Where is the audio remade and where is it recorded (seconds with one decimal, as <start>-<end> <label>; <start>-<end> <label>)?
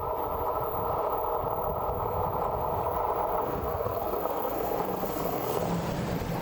0.0-3.4 recorded; 3.4-5.6 remade; 5.6-6.4 recorded